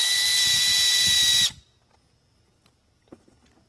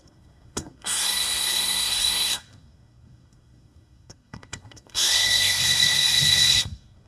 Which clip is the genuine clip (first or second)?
first